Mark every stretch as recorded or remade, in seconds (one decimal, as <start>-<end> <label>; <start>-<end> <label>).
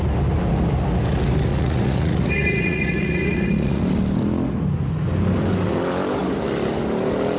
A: 0.0-1.5 recorded; 1.5-3.8 remade; 3.8-7.4 recorded